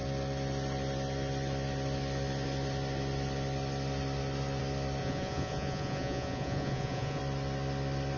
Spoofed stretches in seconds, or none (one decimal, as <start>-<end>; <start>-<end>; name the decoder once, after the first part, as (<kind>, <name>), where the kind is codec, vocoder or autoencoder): 5.0-7.2 (vocoder, Vocos)